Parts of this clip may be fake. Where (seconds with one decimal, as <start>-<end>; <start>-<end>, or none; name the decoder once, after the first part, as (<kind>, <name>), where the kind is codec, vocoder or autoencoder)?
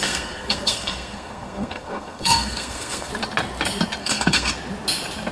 0.0-3.1 (codec, SNAC); 4.0-4.5